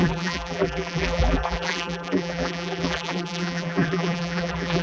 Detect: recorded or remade remade